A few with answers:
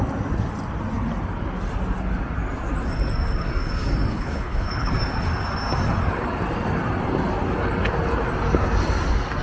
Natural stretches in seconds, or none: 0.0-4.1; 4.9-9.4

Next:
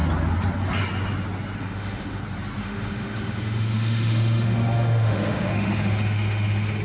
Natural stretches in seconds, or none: 0.0-1.6; 2.2-2.6

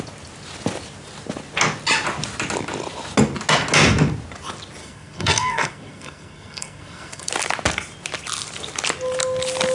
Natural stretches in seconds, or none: 0.0-4.8; 7.3-9.7

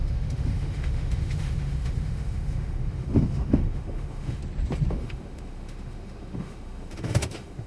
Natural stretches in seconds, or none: 4.4-4.9

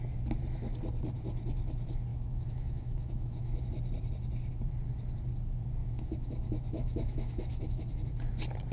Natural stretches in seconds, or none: 0.0-2.1; 3.6-5.8; 8.1-8.7